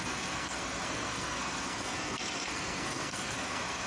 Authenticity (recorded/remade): remade